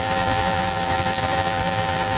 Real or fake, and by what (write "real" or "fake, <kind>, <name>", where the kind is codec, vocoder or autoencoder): fake, vocoder, BigVGAN v2